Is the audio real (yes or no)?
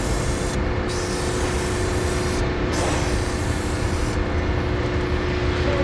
yes